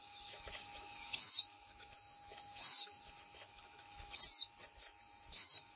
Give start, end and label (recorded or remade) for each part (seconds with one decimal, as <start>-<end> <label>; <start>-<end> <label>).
0.0-4.2 remade; 4.2-4.8 recorded; 4.8-5.8 remade